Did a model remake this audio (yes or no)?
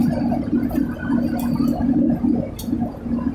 no